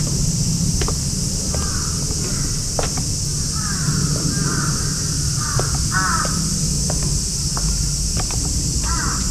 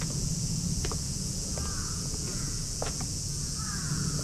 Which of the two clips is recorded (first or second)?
first